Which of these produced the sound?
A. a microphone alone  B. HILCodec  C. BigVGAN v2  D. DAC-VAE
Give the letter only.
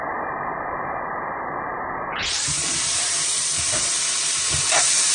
C